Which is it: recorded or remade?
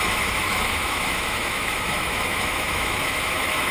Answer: remade